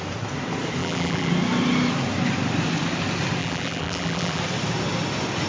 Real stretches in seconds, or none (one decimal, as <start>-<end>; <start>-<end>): 0.0-0.8; 1.3-3.4; 4.4-5.5